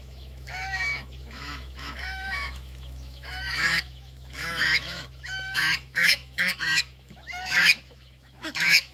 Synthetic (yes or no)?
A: yes